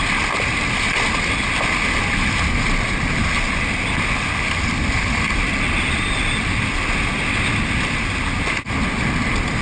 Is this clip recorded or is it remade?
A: recorded